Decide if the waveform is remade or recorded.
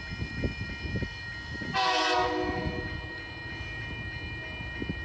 recorded